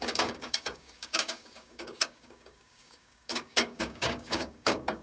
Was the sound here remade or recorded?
remade